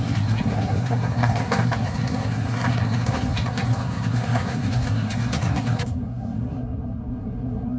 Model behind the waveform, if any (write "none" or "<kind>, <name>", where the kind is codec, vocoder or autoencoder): codec, SNAC